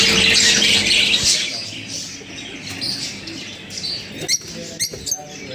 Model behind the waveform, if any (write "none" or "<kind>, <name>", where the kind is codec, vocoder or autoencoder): none